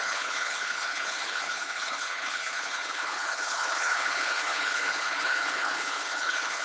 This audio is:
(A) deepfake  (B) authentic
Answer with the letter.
A